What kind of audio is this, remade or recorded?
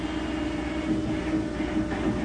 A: recorded